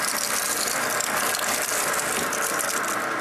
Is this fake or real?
real